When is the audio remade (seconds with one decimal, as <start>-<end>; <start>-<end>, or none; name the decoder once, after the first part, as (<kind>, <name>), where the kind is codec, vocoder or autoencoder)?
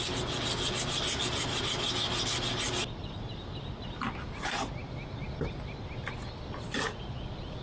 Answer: none